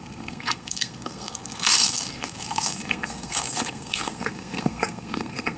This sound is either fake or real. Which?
fake